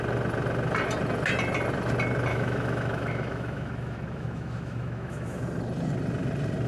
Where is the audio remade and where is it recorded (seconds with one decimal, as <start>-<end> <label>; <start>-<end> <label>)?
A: 0.0-2.3 recorded; 2.3-5.4 remade; 5.4-6.7 recorded